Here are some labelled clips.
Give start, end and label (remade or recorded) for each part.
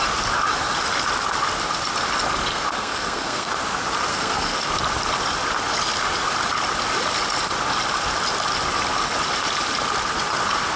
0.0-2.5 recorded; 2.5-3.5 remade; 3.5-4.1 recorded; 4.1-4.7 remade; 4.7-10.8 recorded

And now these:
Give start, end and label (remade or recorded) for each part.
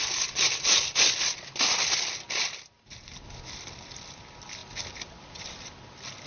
0.0-6.3 recorded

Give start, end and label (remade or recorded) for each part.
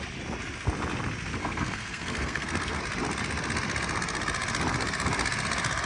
0.0-1.4 recorded; 1.4-2.8 remade; 2.8-5.9 recorded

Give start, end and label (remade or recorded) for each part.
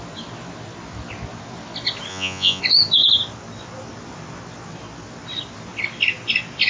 0.0-2.1 recorded; 2.1-2.6 remade; 2.6-6.7 recorded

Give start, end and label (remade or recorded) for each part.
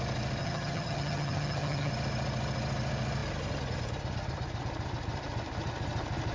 0.0-0.4 recorded; 0.4-1.9 remade; 1.9-6.3 recorded